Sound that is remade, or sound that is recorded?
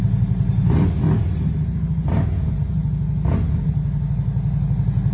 recorded